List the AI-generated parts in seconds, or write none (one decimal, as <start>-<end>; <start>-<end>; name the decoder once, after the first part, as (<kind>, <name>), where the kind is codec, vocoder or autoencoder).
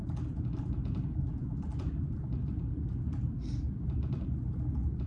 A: none